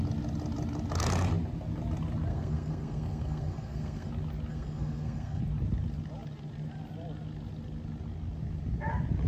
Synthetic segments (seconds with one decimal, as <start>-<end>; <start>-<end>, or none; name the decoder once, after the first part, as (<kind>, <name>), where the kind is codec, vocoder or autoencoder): 2.3-4.1 (codec, SNAC); 4.5-5.4